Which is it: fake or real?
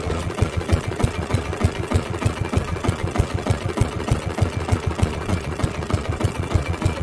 fake